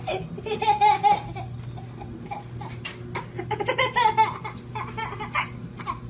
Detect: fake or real real